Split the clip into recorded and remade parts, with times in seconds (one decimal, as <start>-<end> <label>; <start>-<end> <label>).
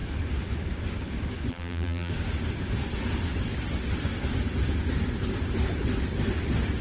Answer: 0.0-1.5 recorded; 1.5-2.1 remade; 2.1-6.8 recorded